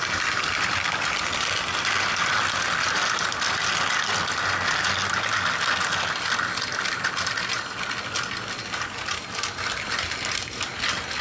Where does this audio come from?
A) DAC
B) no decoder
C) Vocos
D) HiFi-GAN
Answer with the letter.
B